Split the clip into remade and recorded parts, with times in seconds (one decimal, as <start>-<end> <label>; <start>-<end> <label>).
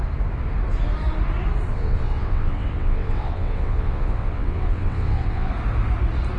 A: 0.0-1.7 recorded; 1.7-5.5 remade; 5.5-6.4 recorded